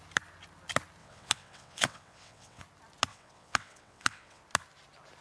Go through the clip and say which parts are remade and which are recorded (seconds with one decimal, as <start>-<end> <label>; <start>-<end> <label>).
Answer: 0.0-1.0 recorded; 1.0-2.6 remade; 2.6-3.1 recorded; 3.1-4.4 remade; 4.4-5.2 recorded